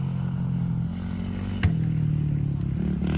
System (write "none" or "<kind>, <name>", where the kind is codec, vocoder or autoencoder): none